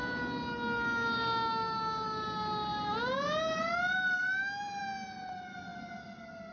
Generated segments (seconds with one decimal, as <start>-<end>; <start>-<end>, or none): none